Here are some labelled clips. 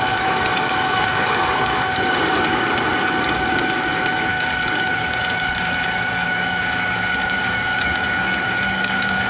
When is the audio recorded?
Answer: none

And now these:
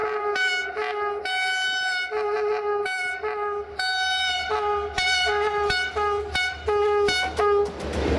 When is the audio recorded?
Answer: 0.0-8.2

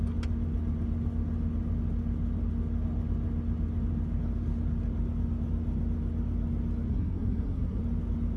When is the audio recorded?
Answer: 0.0-6.9; 7.8-8.4

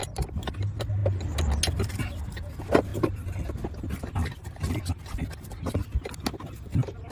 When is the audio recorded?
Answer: 0.5-7.1

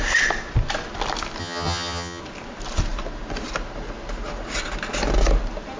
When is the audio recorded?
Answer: 0.0-1.4; 2.2-5.8

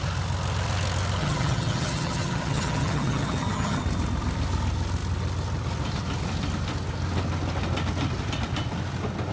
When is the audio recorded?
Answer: 0.0-1.2; 3.8-9.3

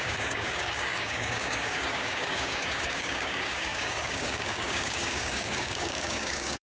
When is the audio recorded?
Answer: none